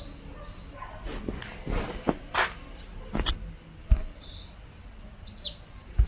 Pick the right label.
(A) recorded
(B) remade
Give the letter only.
A